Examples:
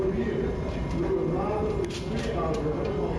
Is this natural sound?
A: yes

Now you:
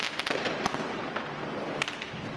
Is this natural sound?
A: yes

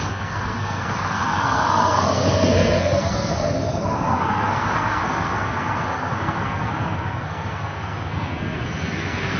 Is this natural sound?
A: no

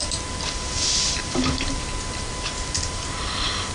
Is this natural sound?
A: no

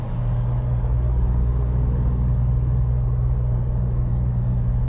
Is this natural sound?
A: no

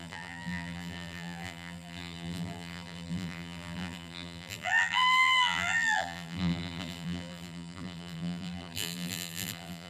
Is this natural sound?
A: no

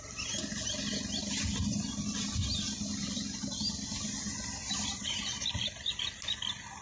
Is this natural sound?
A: yes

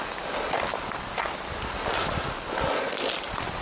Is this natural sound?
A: yes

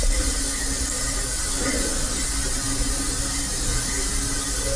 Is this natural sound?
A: yes